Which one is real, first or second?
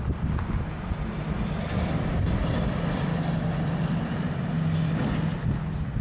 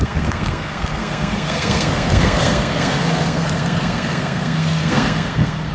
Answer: first